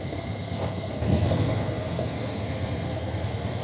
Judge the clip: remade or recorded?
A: remade